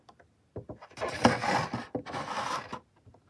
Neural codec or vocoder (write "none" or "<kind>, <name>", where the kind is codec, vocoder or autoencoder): none